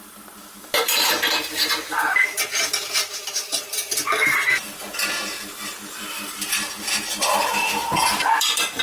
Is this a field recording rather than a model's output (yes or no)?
no